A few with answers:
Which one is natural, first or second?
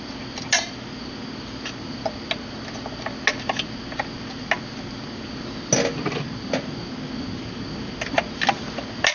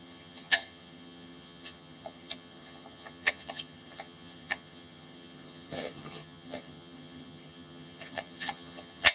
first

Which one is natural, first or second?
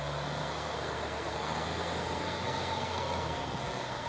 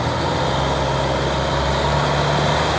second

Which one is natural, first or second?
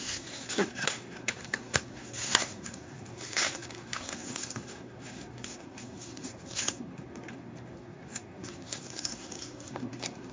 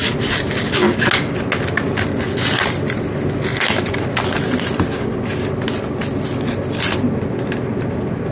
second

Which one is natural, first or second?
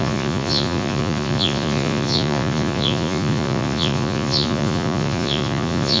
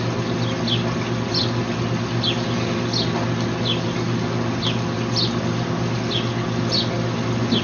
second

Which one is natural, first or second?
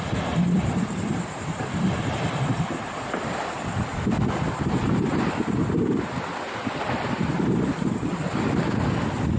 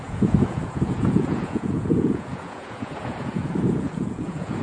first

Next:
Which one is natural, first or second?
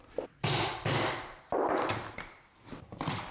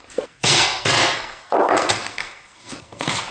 first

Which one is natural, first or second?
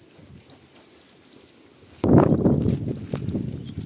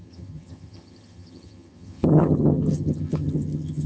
first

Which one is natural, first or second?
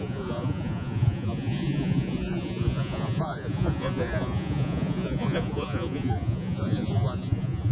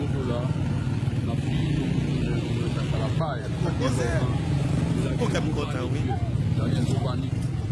second